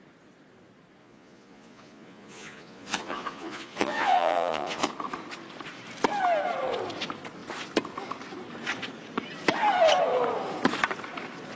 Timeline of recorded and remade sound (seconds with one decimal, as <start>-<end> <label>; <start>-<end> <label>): 0.0-1.0 recorded; 1.0-4.9 remade; 4.9-11.6 recorded